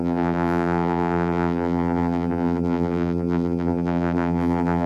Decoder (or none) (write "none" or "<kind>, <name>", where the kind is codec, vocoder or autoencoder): vocoder, BigVGAN v2